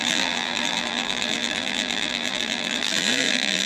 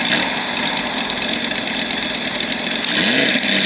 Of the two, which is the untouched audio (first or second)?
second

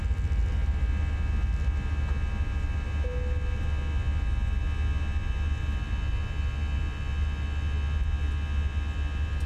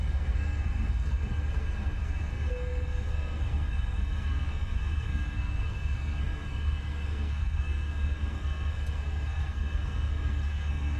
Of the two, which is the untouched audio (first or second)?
first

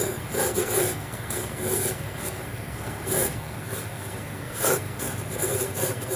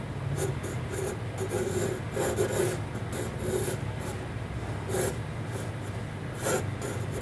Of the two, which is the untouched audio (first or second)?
second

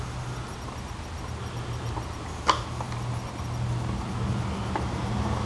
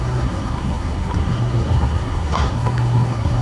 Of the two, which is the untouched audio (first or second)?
first